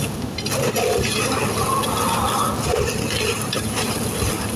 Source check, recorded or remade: recorded